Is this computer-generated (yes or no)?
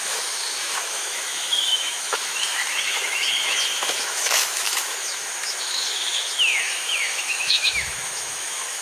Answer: yes